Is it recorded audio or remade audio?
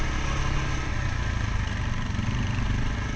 recorded